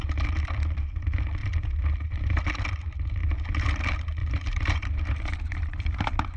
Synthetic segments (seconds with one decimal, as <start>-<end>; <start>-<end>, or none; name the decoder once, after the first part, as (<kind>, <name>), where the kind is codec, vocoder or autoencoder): 1.4-2.4 (vocoder, BigVGAN v2); 3.2-3.8; 4.2-6.4